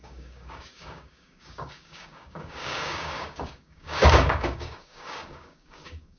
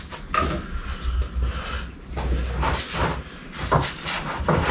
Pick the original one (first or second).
second